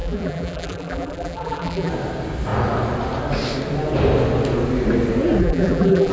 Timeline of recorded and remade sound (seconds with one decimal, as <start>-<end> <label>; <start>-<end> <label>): 0.0-1.9 remade; 1.9-5.4 recorded; 5.4-6.1 remade